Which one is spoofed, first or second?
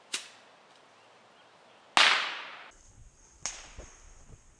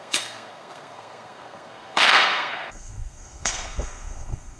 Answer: second